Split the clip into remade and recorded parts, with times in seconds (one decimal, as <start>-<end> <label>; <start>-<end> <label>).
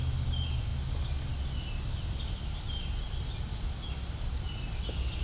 0.0-5.2 recorded